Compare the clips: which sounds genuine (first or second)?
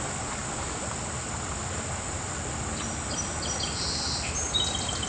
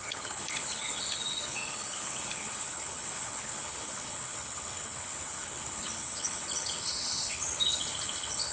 first